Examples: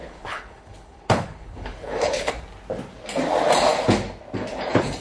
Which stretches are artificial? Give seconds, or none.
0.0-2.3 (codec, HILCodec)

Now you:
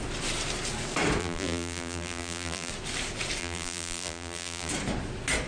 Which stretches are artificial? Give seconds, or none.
1.2-2.7 (vocoder, BigVGAN v2); 3.4-4.7

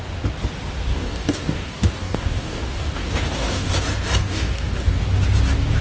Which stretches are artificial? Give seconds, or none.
0.9-3.7 (codec, DAC); 4.2-5.0

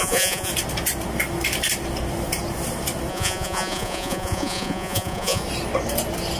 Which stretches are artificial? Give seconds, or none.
0.0-0.5 (vocoder, Vocos); 3.1-5.4

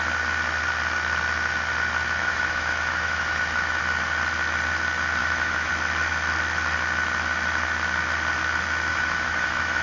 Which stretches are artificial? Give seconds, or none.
2.2-3.8 (autoencoder, DAC-VAE); 5.2-5.7; 8.9-9.8

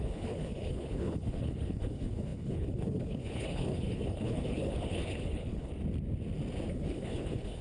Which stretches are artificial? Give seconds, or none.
0.0-5.7 (codec, HILCodec); 6.7-7.6

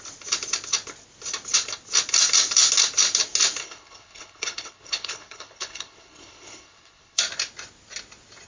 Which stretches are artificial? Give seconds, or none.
3.6-7.2 (codec, HILCodec)

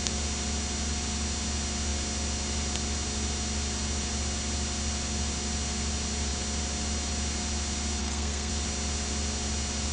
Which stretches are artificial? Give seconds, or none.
8.0-8.5 (codec, SNAC)